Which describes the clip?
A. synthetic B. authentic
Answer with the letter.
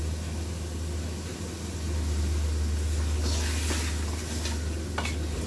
B